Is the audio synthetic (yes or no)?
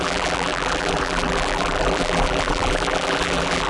yes